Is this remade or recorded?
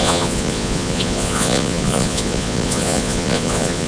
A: remade